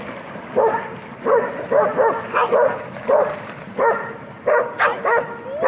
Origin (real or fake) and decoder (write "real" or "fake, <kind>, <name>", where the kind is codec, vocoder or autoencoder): real